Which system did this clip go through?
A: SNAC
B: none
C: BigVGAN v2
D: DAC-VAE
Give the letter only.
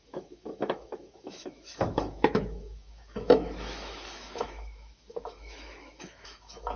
D